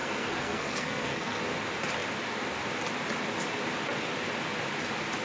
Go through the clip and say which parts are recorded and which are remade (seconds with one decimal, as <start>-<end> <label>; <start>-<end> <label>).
0.0-1.4 remade; 1.4-5.2 recorded